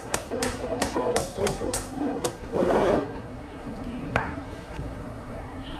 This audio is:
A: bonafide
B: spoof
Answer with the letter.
B